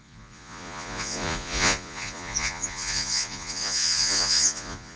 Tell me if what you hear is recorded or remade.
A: remade